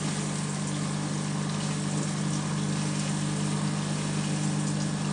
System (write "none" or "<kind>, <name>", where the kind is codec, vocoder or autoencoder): none